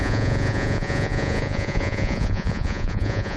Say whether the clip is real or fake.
fake